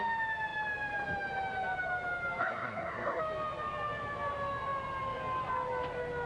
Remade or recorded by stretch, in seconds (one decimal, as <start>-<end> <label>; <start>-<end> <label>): 0.0-2.4 recorded; 2.4-3.2 remade; 3.2-6.3 recorded